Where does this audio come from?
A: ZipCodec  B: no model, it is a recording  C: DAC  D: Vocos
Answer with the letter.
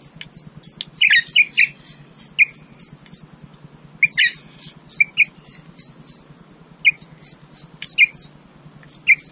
B